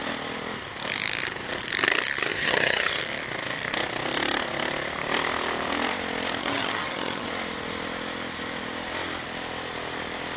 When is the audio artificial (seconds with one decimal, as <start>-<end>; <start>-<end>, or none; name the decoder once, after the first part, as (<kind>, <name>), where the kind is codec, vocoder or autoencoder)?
2.3-3.0 (vocoder, HiFi-GAN); 6.4-7.3